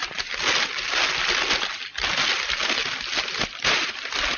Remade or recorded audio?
recorded